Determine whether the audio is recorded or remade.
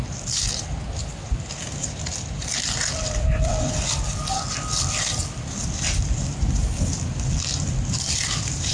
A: recorded